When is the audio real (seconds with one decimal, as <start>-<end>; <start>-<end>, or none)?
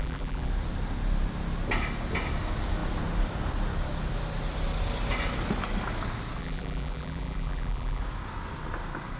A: 0.5-6.4; 8.0-9.2